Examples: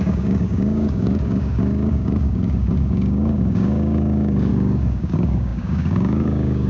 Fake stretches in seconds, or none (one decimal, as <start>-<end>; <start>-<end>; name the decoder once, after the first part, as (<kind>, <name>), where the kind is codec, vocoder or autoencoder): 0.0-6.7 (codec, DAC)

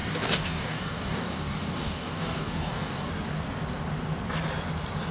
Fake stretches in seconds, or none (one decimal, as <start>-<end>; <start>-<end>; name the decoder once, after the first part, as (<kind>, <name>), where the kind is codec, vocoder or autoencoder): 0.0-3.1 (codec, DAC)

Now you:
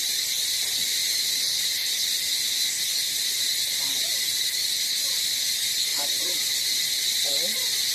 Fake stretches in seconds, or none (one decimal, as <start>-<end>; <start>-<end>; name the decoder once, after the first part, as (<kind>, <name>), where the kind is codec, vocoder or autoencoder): 5.9-6.4 (vocoder, BigVGAN v2)